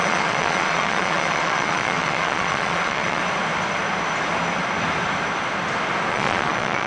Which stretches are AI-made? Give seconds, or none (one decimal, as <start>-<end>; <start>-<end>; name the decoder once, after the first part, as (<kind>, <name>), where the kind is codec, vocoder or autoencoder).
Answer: 0.0-3.2 (vocoder, Vocos); 6.1-6.9